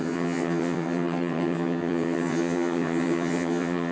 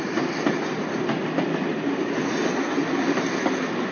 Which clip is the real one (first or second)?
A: second